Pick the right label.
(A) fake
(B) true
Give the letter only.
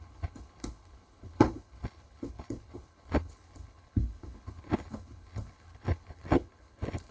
A